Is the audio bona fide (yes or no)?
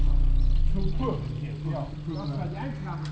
yes